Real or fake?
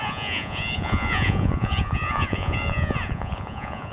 fake